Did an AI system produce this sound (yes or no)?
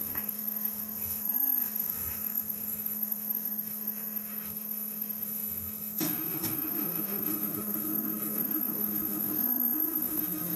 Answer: yes